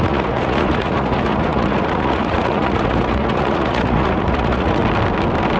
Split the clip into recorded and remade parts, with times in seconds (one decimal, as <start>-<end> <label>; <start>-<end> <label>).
0.0-4.8 remade; 4.8-5.6 recorded